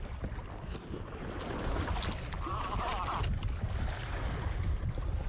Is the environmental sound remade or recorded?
recorded